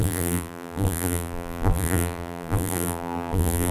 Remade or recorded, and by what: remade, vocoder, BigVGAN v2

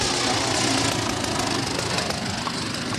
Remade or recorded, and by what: recorded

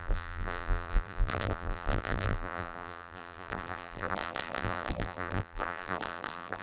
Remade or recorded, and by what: remade, vocoder, BigVGAN v2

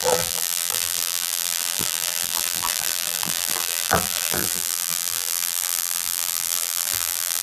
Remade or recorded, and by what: remade, vocoder, BigVGAN v2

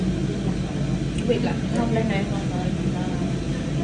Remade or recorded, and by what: recorded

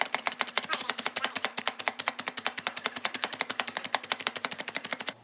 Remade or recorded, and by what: remade, vocoder, BigVGAN v2